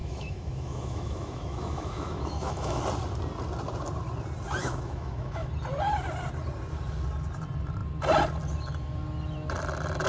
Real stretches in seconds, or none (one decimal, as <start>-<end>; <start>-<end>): 2.8-4.6; 5.5-10.1